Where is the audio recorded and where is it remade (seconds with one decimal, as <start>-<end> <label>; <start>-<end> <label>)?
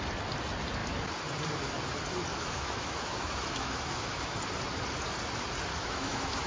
0.0-2.3 recorded; 2.3-4.4 remade; 4.4-5.7 recorded; 5.7-6.5 remade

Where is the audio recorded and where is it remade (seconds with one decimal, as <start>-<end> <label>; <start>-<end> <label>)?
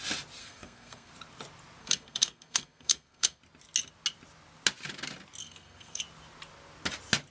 0.0-0.4 recorded; 0.4-1.1 remade; 1.1-1.8 recorded; 1.8-3.4 remade; 3.4-5.4 recorded; 5.4-6.0 remade; 6.0-7.3 recorded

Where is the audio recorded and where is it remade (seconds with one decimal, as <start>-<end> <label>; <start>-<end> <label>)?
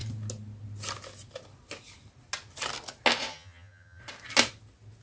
0.0-3.3 recorded; 3.3-4.0 remade; 4.0-5.0 recorded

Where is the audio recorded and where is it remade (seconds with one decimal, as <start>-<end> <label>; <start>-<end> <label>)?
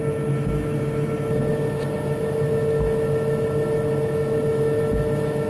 0.0-5.5 recorded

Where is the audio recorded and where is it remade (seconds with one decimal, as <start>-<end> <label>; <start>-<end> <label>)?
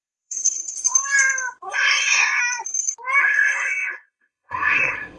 0.0-0.6 remade; 0.6-1.7 recorded; 1.7-2.4 remade; 2.4-3.2 recorded; 3.2-5.2 remade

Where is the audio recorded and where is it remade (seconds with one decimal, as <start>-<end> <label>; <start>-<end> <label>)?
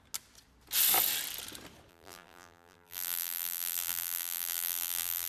0.0-1.9 recorded; 1.9-5.3 remade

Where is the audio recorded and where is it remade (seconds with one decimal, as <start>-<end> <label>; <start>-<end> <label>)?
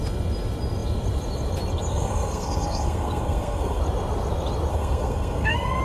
0.0-1.9 recorded; 1.9-3.8 remade; 3.8-4.7 recorded; 4.7-5.8 remade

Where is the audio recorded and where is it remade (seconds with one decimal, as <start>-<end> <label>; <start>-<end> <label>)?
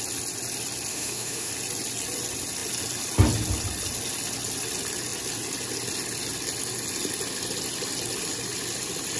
0.0-0.9 recorded; 0.9-1.5 remade; 1.5-9.2 recorded